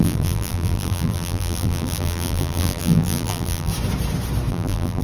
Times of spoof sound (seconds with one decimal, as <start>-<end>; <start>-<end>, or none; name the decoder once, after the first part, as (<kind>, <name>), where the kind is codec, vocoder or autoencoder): 0.0-3.7 (vocoder, BigVGAN v2); 4.5-5.0